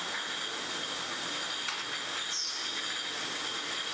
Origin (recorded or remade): recorded